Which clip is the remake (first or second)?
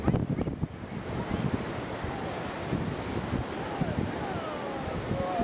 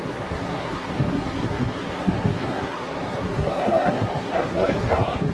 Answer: second